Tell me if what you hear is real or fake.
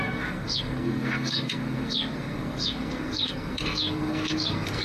fake